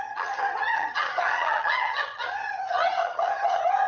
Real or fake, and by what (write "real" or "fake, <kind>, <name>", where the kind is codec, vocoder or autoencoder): fake, vocoder, HiFi-GAN